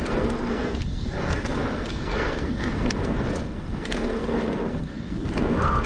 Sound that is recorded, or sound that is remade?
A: remade